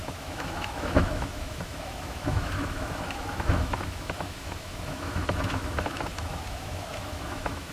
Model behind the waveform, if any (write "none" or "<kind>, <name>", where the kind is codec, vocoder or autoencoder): autoencoder, DAC-VAE